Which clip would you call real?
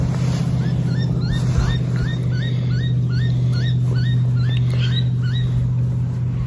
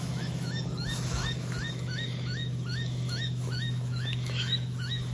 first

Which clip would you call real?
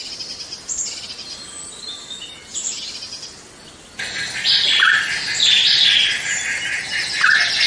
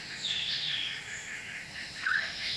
first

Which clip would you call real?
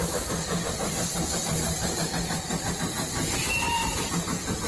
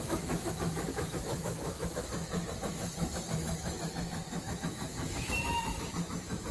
first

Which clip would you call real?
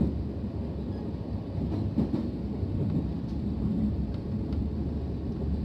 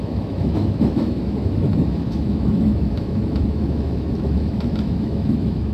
first